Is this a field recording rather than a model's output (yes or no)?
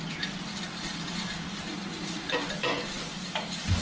yes